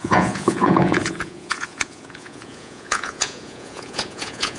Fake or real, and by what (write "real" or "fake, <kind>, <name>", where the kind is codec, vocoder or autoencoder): fake, vocoder, Vocos